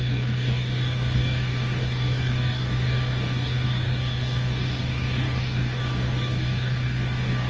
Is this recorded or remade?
remade